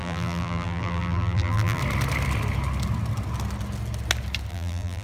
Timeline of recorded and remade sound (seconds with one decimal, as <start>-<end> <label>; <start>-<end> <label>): 0.0-1.8 remade; 1.8-4.5 recorded; 4.5-5.0 remade